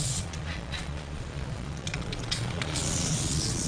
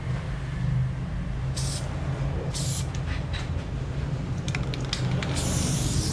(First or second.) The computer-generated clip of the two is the first